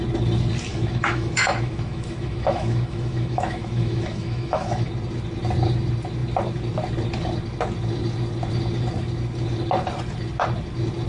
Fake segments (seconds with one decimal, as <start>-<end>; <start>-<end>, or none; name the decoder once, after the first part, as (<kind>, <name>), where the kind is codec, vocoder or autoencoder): 0.7-4.9 (autoencoder, DAC-VAE)